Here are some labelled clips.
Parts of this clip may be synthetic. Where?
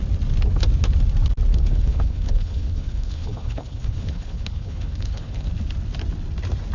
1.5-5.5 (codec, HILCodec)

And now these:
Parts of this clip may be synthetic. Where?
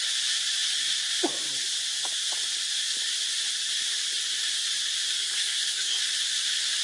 5.2-6.0 (codec, SNAC)